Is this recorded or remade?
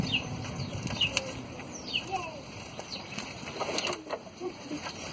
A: remade